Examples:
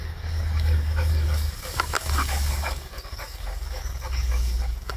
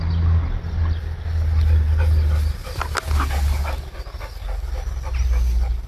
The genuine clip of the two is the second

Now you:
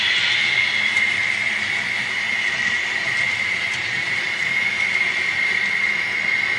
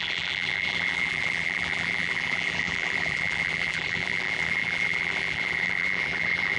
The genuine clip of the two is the first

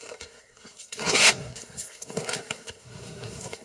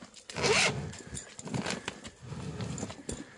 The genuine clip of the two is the second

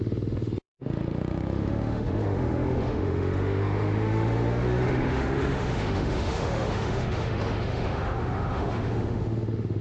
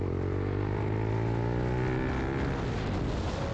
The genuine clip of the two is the second